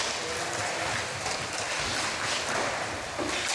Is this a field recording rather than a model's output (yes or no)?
yes